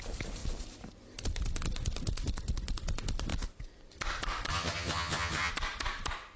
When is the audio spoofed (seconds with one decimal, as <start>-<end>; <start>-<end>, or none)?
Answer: 4.5-5.5